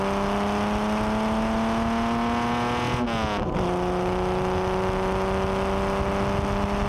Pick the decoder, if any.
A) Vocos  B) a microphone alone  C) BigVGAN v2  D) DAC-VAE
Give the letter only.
B